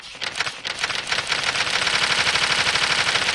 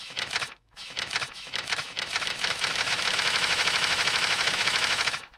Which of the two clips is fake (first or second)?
second